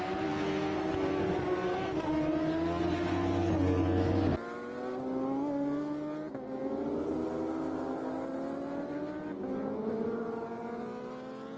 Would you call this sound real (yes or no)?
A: yes